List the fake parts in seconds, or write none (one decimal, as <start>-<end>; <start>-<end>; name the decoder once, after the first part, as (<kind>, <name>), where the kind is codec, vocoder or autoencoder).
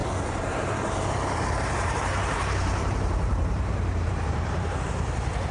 0.6-5.5 (vocoder, BigVGAN v2)